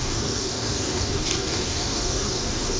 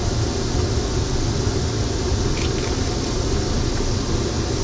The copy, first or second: first